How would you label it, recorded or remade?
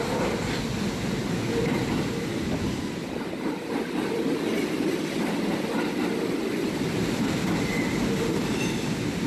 recorded